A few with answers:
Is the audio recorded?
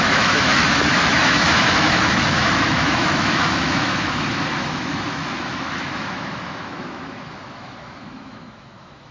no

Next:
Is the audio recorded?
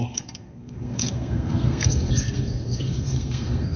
no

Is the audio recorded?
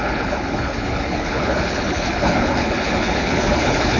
no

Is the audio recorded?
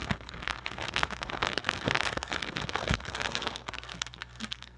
no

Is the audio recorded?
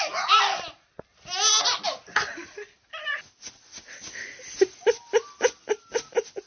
yes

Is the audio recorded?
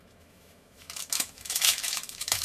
no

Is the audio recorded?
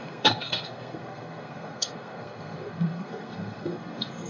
no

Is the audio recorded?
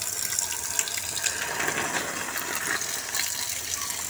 yes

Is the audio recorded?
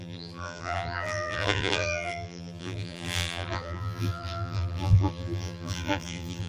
no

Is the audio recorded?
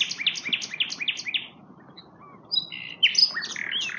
yes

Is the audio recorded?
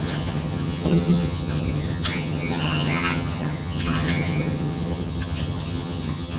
no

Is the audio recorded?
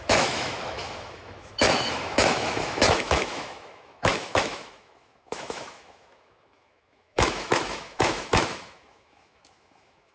no